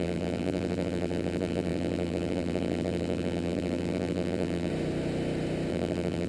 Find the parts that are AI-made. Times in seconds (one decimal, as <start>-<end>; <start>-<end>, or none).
0.0-4.7; 5.7-6.3